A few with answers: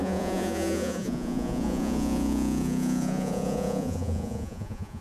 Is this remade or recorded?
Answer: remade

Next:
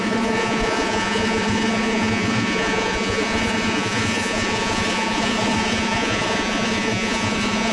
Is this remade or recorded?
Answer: remade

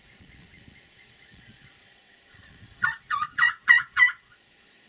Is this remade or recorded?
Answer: remade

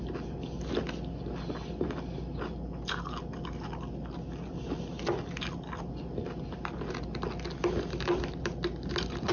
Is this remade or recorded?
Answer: recorded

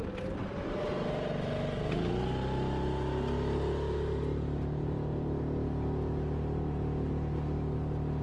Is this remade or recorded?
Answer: recorded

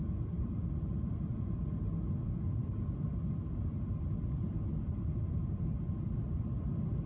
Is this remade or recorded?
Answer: recorded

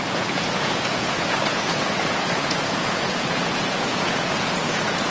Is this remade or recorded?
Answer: remade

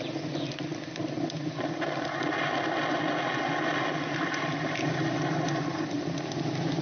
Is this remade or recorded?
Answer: recorded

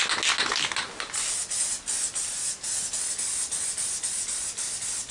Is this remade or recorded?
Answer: recorded